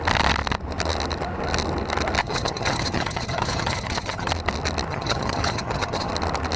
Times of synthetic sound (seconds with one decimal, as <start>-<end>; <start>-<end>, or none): 2.2-4.3; 4.9-6.1

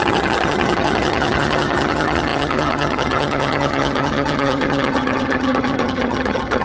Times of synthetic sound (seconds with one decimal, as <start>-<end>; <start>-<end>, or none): 0.0-6.6